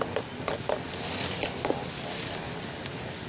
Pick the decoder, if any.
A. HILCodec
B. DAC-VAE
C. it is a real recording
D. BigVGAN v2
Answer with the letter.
C